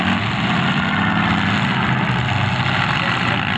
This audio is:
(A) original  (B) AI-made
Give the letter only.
A